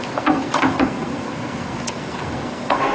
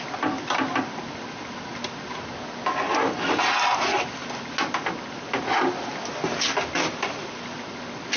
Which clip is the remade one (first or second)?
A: first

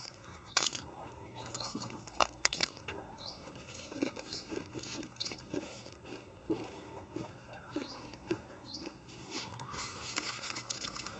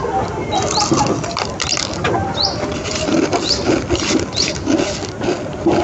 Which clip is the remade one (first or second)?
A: first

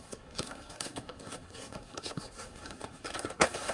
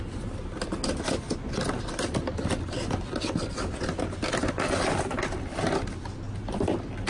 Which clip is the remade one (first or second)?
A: first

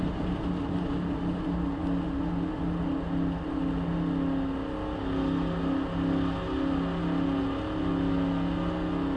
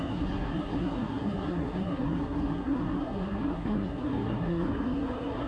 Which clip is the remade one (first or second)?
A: second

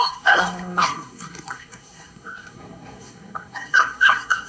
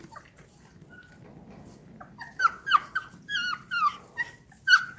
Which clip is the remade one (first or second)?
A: first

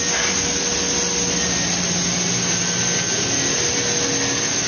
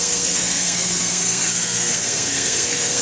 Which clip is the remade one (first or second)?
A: second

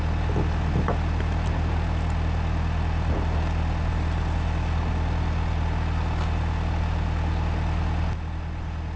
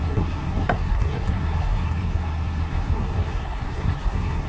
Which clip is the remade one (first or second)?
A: second